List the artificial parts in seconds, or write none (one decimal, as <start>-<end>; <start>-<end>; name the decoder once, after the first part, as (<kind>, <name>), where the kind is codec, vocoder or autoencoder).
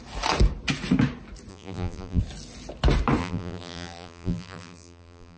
1.5-2.2 (vocoder, BigVGAN v2); 3.2-5.4